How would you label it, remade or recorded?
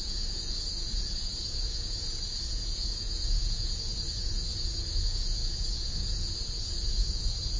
remade